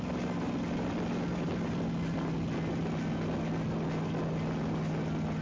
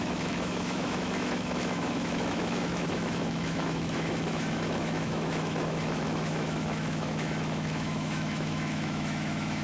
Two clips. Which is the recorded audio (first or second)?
first